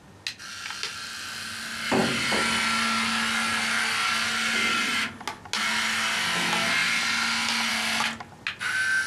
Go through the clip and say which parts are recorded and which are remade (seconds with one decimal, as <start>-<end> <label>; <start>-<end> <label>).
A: 0.0-9.1 recorded